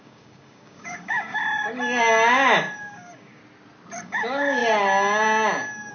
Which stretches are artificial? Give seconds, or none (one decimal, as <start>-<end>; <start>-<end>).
0.0-1.4; 2.8-3.4; 4.0-4.6

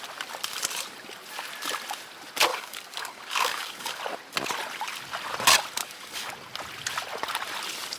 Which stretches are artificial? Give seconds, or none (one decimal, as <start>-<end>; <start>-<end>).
2.5-4.0; 5.8-6.3

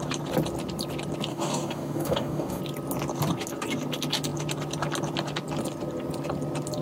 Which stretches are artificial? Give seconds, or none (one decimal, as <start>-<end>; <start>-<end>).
1.3-2.6

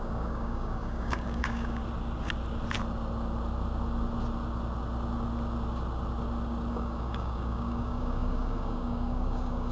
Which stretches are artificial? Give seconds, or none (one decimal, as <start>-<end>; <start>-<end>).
0.0-1.8; 6.7-9.7

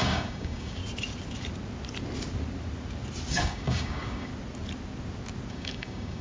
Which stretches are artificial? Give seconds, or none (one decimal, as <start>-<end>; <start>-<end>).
0.0-0.8; 3.3-4.3; 5.5-6.2

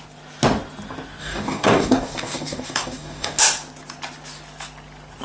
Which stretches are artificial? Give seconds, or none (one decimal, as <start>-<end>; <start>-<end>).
1.2-3.4

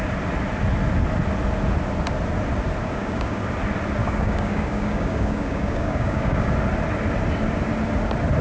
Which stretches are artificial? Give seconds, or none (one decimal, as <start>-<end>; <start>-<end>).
2.8-3.4; 4.0-6.5